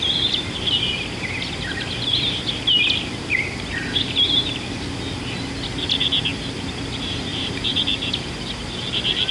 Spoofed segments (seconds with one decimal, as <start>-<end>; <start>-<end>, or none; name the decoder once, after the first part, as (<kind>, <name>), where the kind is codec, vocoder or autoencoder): 7.3-7.8 (vocoder, BigVGAN v2)